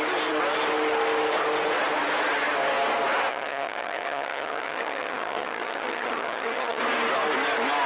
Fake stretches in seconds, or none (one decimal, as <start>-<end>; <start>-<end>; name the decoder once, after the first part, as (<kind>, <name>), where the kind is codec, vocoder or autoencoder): 3.3-6.8 (vocoder, HiFi-GAN)